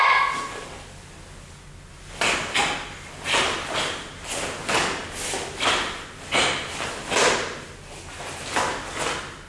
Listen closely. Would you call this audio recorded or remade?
recorded